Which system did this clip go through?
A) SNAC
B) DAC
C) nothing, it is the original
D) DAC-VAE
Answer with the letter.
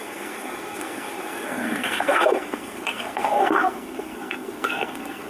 A